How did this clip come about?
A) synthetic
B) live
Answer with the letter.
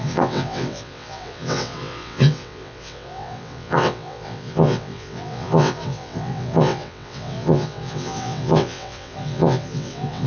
A